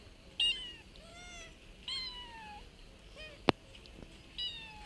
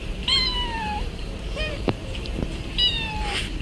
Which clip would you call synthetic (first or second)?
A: second